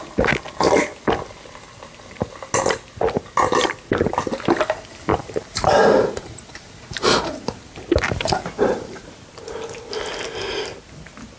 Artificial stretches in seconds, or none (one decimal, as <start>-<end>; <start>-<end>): 5.1-9.3